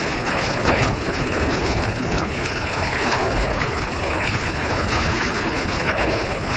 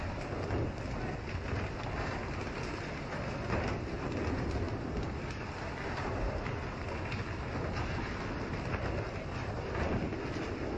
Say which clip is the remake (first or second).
first